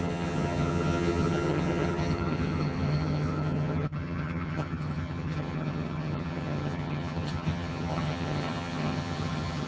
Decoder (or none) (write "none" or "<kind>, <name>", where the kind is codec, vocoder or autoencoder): vocoder, HiFi-GAN